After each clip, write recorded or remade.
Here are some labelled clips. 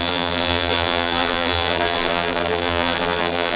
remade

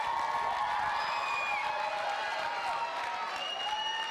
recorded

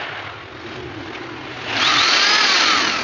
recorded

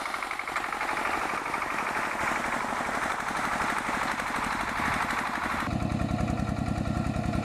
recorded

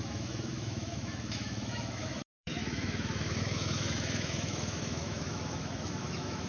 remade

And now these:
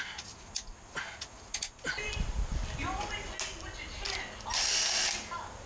recorded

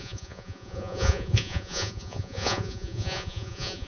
remade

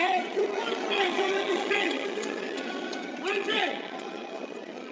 remade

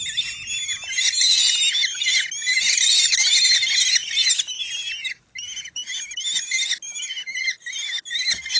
recorded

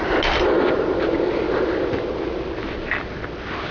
recorded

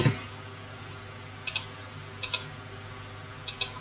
recorded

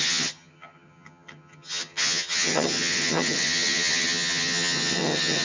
remade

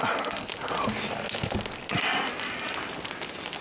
recorded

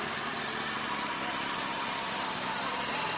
recorded